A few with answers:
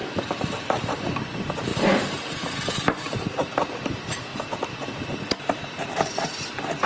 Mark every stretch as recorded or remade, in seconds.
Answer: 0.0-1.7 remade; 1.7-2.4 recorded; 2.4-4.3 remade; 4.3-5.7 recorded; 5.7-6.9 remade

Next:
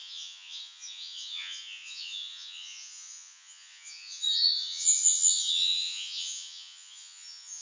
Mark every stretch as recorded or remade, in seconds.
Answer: 0.0-7.6 remade